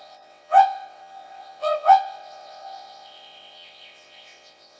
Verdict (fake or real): fake